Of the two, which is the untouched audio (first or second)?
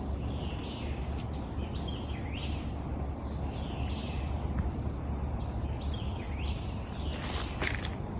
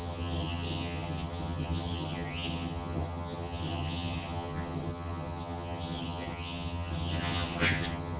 first